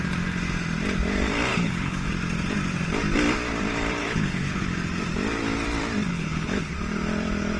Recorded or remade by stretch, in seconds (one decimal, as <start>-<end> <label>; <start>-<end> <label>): 0.0-1.5 recorded; 1.5-2.1 remade; 2.1-4.0 recorded; 4.0-4.7 remade; 4.7-6.1 recorded; 6.1-6.7 remade; 6.7-7.6 recorded